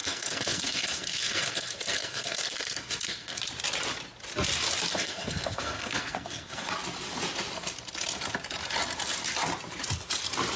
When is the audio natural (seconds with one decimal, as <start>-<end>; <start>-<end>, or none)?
3.4-4.9; 6.7-10.6